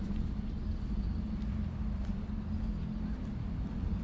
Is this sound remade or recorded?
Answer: recorded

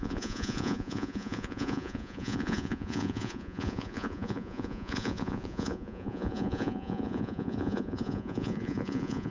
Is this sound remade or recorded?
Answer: remade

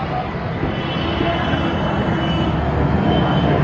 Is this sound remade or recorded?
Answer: recorded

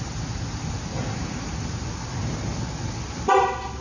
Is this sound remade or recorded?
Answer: recorded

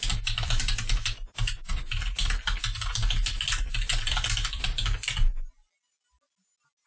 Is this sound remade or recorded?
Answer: recorded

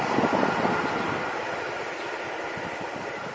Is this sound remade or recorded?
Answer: recorded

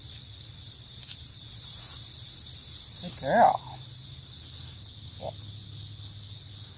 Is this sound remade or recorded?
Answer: recorded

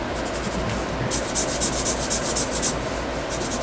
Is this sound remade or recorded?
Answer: recorded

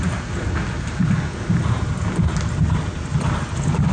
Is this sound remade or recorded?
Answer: recorded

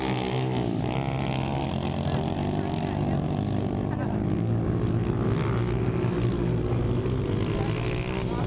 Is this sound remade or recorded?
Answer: recorded